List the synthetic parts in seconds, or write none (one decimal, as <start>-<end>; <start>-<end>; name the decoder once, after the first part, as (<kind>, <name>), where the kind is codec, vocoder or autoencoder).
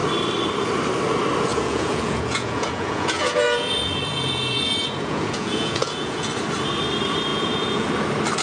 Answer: 1.5-6.3 (vocoder, Vocos); 7.3-7.9